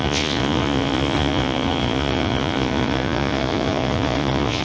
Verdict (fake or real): fake